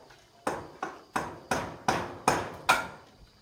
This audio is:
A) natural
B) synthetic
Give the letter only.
A